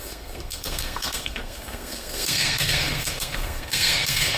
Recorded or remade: remade